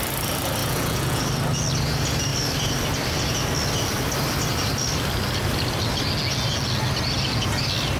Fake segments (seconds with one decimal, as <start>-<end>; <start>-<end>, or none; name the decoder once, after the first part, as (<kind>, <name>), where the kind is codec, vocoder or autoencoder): 0.6-1.2 (vocoder, Vocos)